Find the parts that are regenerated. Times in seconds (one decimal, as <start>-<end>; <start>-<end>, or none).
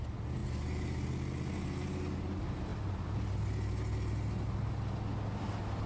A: none